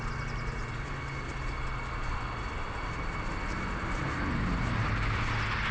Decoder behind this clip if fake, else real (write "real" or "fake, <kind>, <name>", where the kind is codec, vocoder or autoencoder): real